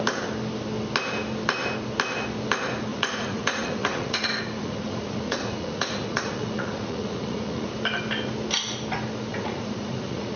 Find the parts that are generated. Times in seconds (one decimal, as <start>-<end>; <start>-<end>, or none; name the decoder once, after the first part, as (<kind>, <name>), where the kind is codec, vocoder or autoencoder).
2.9-7.7 (vocoder, Vocos); 9.3-10.4

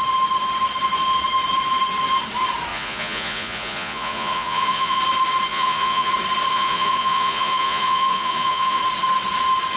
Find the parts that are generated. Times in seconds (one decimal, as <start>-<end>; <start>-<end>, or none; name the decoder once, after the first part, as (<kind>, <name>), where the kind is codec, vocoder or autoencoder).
2.7-5.0 (vocoder, Vocos); 5.5-6.1; 6.5-8.8

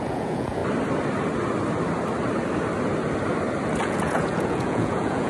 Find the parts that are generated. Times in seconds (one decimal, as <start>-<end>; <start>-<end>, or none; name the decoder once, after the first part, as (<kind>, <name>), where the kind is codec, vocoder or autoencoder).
0.0-0.6 (vocoder, Vocos); 3.8-5.3

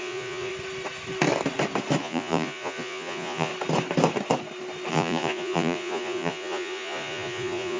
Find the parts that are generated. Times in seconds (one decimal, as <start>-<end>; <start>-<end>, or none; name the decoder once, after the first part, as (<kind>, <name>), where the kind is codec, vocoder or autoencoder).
0.0-0.5 (vocoder, Vocos); 2.0-3.5; 4.9-7.8

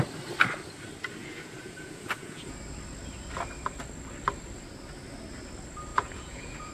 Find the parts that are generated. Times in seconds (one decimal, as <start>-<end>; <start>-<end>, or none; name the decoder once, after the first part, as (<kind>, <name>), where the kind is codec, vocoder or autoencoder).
1.2-2.6 (vocoder, Vocos); 5.9-6.7